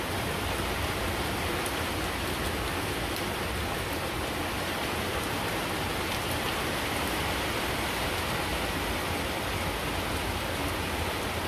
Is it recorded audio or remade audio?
recorded